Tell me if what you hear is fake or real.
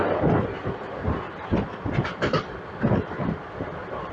real